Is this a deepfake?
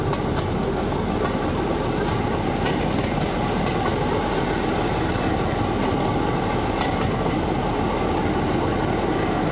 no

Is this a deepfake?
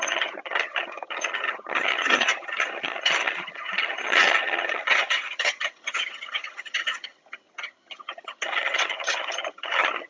yes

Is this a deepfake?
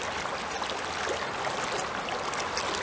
no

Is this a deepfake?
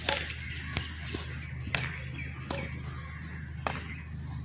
no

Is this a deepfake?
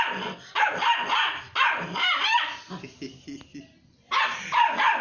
no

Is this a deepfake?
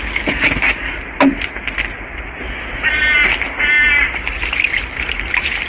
no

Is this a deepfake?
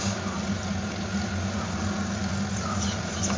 no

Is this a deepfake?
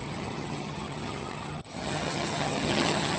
yes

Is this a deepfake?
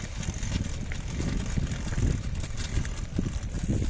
no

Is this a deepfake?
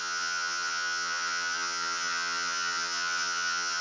yes